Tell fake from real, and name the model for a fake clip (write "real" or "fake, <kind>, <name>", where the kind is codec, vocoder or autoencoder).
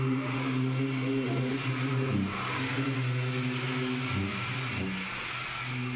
real